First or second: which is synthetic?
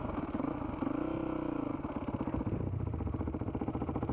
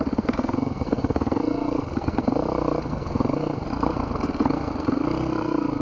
second